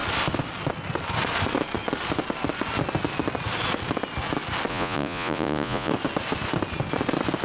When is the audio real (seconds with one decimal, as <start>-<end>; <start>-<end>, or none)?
0.0-4.7; 5.9-7.4